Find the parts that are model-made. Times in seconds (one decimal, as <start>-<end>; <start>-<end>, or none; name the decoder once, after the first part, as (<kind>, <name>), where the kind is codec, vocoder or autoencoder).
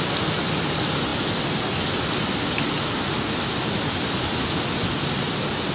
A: none